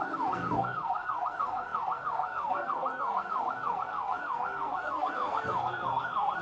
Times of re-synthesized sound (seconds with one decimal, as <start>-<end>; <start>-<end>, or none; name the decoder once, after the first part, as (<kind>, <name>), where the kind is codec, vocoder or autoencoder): 0.0-6.4 (codec, SNAC)